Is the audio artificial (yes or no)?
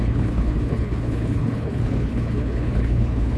yes